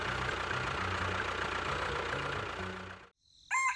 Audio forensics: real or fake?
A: real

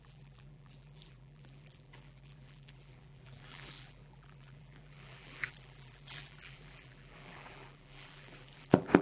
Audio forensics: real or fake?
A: fake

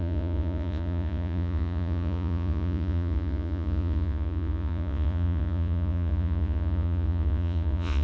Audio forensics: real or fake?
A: fake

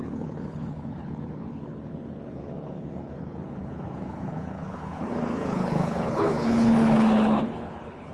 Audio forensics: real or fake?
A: fake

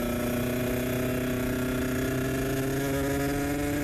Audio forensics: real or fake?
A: real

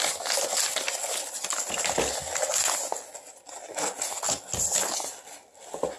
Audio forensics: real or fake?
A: real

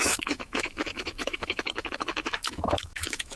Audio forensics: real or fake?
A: fake